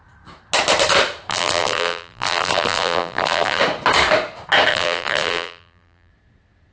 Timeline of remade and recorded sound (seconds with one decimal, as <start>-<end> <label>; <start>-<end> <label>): 0.0-1.3 recorded; 1.3-3.6 remade; 3.6-4.7 recorded; 4.7-6.1 remade; 6.1-6.7 recorded